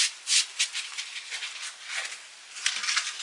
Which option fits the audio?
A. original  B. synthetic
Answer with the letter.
A